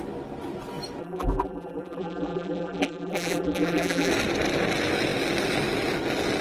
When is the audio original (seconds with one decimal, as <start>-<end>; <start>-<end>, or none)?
0.0-1.0; 4.1-6.4